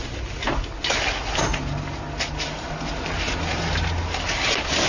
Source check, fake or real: real